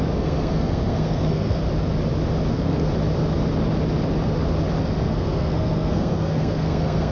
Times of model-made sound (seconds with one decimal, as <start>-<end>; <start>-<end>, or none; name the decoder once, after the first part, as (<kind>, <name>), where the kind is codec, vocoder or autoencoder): 0.0-1.6 (codec, SNAC); 2.5-2.9; 4.8-7.1

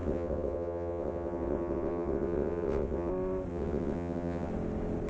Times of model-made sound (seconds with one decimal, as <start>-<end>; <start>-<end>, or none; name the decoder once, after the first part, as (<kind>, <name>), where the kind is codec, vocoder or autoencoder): 0.0-3.1 (vocoder, WaveNeXt); 3.5-4.5